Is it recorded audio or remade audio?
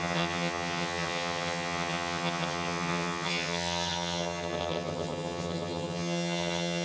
remade